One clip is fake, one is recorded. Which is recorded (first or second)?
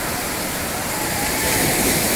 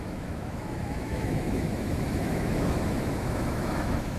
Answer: first